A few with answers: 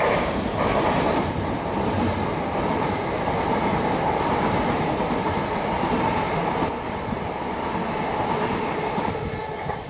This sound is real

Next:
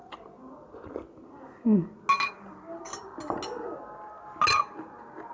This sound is real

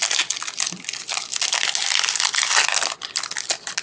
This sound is real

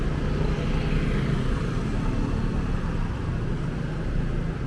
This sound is real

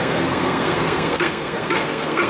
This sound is fake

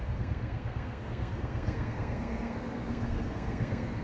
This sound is fake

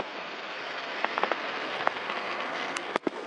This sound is fake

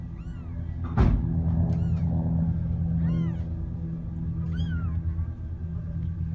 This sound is real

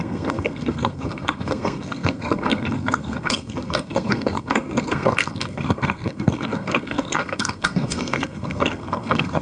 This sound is fake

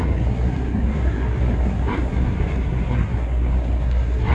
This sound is fake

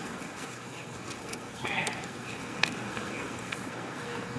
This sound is fake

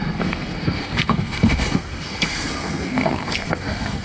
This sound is fake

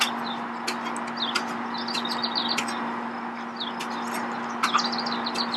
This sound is real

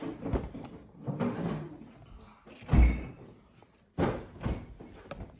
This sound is real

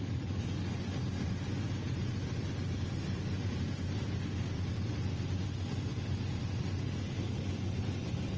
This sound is real